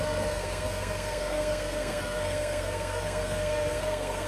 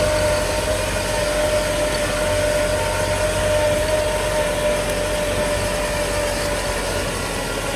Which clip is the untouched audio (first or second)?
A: second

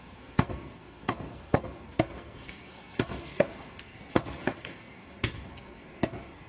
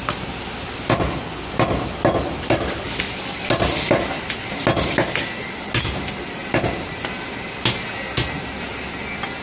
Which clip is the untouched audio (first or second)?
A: second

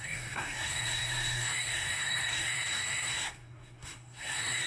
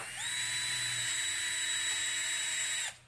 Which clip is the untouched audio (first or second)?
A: second